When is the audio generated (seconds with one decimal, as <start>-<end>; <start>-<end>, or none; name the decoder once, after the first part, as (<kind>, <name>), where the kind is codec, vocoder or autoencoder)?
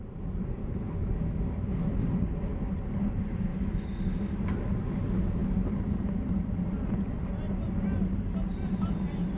0.6-1.5 (autoencoder, DAC-VAE)